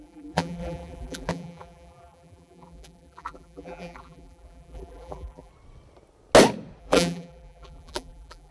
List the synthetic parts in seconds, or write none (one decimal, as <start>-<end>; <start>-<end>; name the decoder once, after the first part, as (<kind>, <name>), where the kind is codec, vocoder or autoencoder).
0.0-5.5 (vocoder, BigVGAN v2); 6.8-8.5